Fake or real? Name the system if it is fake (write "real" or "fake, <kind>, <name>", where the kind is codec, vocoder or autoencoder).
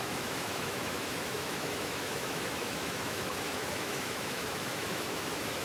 fake, autoencoder, DAC-VAE